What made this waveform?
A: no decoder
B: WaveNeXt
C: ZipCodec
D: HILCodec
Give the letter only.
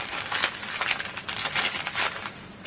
A